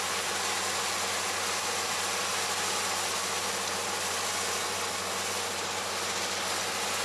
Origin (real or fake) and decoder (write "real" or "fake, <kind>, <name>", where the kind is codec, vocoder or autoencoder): real